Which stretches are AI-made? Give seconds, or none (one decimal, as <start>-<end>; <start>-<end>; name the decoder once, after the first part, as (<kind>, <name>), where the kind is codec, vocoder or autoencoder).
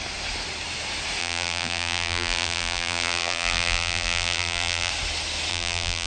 1.2-4.9 (vocoder, BigVGAN v2); 5.5-6.1